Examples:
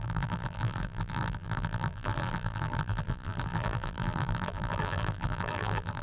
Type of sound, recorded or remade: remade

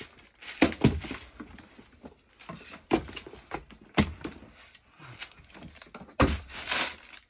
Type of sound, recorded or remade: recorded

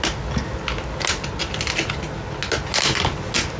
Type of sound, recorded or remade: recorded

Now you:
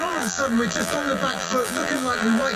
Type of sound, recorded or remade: remade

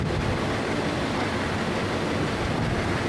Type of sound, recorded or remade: remade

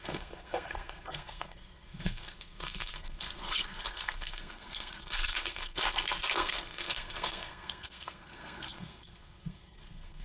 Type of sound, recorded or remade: remade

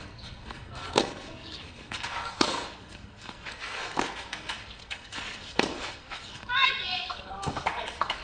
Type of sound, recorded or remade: remade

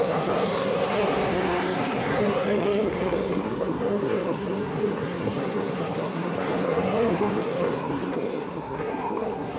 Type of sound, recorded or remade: remade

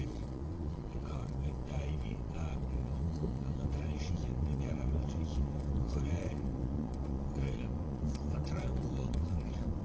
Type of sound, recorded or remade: remade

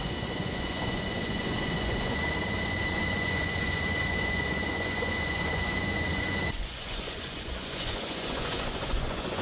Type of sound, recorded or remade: remade